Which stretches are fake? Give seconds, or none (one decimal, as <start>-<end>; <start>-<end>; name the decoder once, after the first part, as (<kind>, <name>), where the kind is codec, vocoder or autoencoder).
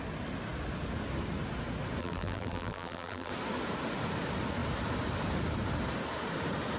2.0-3.3 (vocoder, BigVGAN v2)